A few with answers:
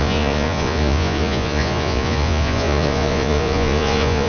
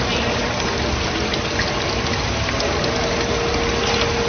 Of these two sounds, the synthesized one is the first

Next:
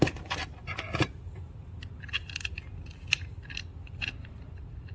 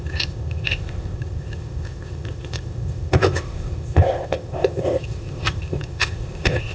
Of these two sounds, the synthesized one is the second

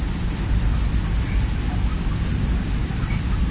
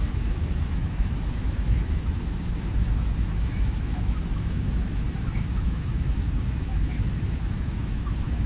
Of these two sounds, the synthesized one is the second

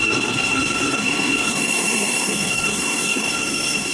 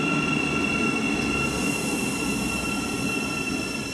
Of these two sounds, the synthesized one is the first